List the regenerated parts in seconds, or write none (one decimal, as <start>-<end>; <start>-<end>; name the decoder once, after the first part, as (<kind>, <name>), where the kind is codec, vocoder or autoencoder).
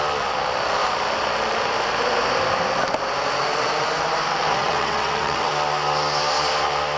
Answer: 4.6-5.5 (vocoder, WaveNeXt)